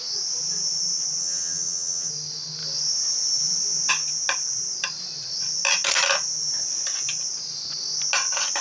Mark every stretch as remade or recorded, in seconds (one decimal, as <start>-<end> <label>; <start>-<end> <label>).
0.0-1.2 recorded; 1.2-2.1 remade; 2.1-8.6 recorded